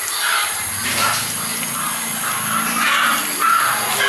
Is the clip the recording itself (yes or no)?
yes